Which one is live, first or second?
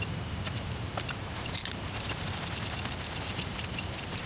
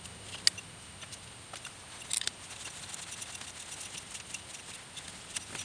second